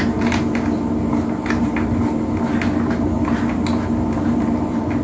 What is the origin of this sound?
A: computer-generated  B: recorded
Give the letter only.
B